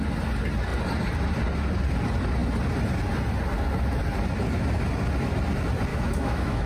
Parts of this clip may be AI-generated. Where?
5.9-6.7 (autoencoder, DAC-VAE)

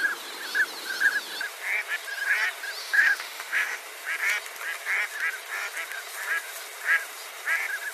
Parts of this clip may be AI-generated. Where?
2.8-3.8 (autoencoder, DAC-VAE)

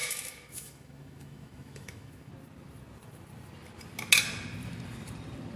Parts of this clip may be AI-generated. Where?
0.0-2.3 (autoencoder, DAC-VAE)

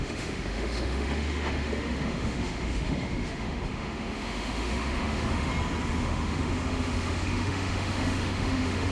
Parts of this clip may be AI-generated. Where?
0.0-5.5 (autoencoder, DAC-VAE); 6.0-8.9

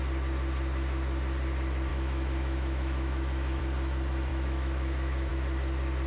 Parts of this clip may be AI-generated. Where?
1.9-3.6 (autoencoder, DAC-VAE); 4.3-5.3

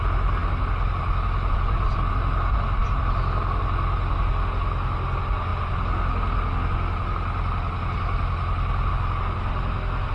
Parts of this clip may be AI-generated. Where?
none